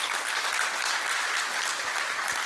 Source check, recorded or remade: recorded